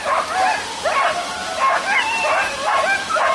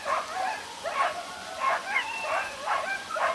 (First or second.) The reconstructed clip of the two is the second